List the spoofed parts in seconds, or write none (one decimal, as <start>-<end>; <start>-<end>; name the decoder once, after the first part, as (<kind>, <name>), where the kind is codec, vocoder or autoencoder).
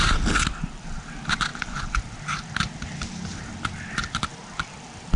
0.0-5.2 (vocoder, BigVGAN v2)